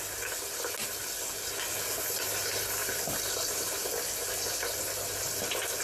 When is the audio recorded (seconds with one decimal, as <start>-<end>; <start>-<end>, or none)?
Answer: 0.0-5.8